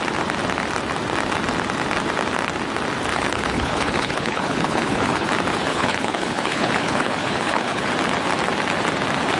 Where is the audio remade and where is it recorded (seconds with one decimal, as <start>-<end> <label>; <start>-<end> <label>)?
0.0-3.1 recorded; 3.1-5.3 remade; 5.3-5.7 recorded; 5.7-7.9 remade; 7.9-9.4 recorded